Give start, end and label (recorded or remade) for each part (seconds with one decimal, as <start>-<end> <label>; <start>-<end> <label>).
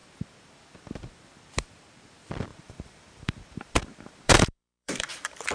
0.0-2.5 recorded; 2.5-5.5 remade